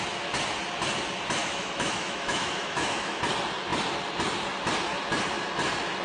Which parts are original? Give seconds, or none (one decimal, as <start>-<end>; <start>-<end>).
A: 0.0-1.4; 3.2-6.0